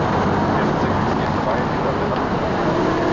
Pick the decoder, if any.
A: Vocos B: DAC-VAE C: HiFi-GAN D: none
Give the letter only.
D